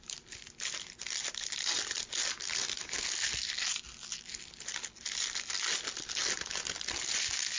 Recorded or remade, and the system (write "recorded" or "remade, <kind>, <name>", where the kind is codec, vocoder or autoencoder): recorded